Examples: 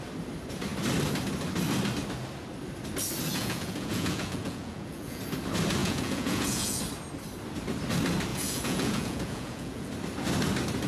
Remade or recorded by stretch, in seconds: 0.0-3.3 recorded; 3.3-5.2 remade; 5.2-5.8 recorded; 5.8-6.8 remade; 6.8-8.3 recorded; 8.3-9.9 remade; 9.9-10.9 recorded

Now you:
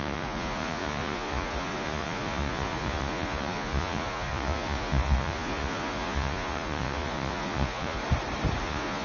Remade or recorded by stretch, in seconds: 0.0-8.0 remade; 8.0-8.6 recorded; 8.6-9.0 remade

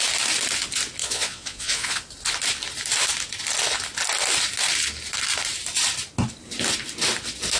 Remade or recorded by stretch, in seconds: 0.0-1.0 recorded; 1.0-2.0 remade; 2.0-7.6 recorded

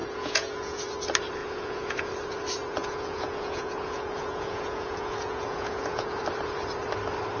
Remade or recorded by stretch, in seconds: 0.0-0.8 remade; 0.8-1.4 recorded; 1.4-2.1 remade; 2.1-2.8 recorded; 2.8-6.2 remade; 6.2-7.4 recorded

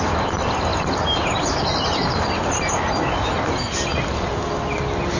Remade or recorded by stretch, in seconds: 0.0-5.2 recorded

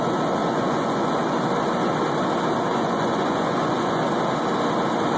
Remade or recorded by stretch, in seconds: 0.0-0.4 recorded; 0.4-1.1 remade; 1.1-2.7 recorded; 2.7-4.0 remade; 4.0-5.2 recorded

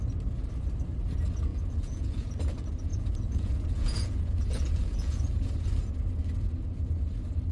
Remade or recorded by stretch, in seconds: 0.0-1.5 recorded; 1.5-2.3 remade; 2.3-2.9 recorded; 2.9-5.5 remade; 5.5-7.5 recorded